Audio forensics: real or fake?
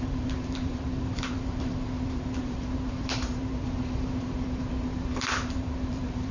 fake